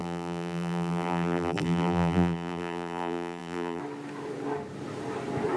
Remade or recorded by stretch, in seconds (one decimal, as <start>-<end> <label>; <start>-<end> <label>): 0.0-3.8 remade; 3.8-5.6 recorded